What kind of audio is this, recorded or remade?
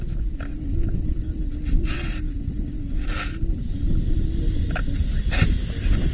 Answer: recorded